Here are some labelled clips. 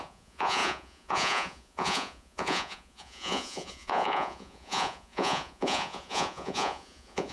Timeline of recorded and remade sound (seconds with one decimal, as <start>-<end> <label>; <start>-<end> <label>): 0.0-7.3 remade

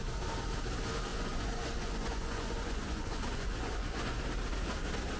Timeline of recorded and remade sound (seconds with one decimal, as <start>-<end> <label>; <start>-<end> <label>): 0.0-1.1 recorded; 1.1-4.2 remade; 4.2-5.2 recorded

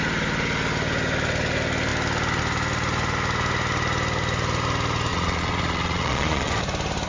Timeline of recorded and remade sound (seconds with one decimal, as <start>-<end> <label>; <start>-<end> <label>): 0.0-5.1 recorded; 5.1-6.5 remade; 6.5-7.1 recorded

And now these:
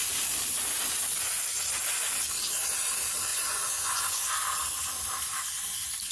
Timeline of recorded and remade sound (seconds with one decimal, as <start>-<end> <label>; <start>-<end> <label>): 0.0-3.3 recorded; 3.3-4.3 remade; 4.3-6.1 recorded

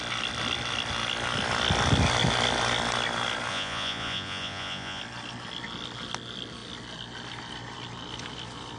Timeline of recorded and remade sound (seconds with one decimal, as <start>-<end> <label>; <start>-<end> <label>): 0.0-3.5 recorded; 3.5-5.0 remade; 5.0-8.8 recorded